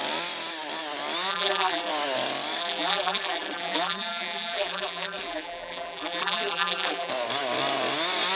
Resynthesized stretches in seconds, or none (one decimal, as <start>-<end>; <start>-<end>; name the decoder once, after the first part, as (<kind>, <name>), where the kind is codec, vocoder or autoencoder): 1.3-1.9 (vocoder, BigVGAN v2); 2.6-7.1